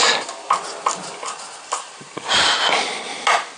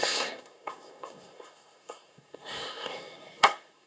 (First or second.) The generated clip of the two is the second